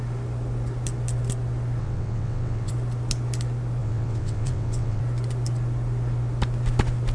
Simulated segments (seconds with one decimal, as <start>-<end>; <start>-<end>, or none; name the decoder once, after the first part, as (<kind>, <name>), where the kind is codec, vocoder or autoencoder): 1.8-2.7 (vocoder, WaveNeXt); 3.8-5.0

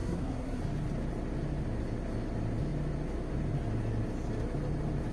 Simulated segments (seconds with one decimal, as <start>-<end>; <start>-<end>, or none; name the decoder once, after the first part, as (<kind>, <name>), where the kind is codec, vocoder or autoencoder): 0.0-0.6 (codec, SNAC)

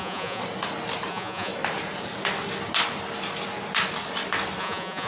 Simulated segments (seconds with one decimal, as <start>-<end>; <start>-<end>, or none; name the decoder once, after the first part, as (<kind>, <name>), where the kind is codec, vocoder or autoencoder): 0.0-0.4 (vocoder, Vocos); 1.1-1.5; 4.6-5.1

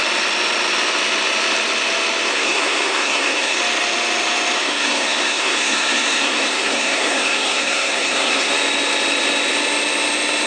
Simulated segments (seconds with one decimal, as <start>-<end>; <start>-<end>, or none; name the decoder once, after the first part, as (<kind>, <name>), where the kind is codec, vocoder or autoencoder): 2.3-3.6 (codec, SNAC); 4.6-8.5

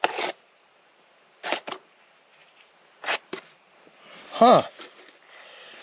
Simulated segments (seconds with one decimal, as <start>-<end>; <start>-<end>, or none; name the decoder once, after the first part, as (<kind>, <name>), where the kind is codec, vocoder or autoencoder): none

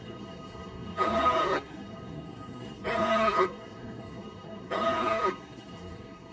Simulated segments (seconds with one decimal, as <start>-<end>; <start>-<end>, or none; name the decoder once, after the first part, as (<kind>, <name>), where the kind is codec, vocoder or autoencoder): 0.0-6.3 (codec, SNAC)

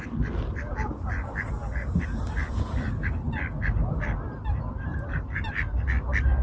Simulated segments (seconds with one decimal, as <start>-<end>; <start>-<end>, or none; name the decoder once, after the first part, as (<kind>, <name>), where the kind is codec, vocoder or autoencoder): 4.9-5.5 (vocoder, BigVGAN v2)